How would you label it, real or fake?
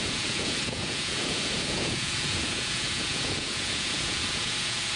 fake